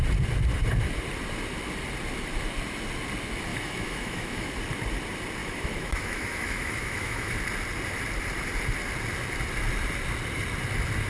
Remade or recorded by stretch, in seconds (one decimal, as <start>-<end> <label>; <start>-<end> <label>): 0.0-3.5 recorded; 3.5-4.5 remade; 4.5-5.4 recorded; 5.4-7.3 remade; 7.3-11.1 recorded